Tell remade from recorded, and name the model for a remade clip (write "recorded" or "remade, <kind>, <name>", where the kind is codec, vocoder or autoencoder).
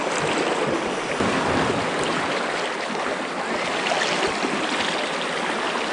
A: recorded